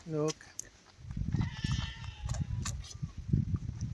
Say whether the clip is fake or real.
real